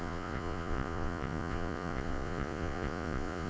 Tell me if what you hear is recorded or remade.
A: remade